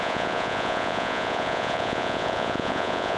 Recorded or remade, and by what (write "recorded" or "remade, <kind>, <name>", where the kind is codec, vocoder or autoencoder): remade, vocoder, Vocos